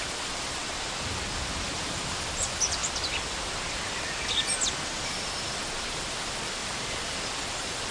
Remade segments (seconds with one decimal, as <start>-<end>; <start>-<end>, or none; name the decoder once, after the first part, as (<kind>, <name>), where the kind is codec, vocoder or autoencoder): 0.0-0.6 (vocoder, BigVGAN v2); 1.7-2.8; 5.0-7.9